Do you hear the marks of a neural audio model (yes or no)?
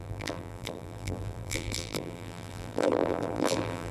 yes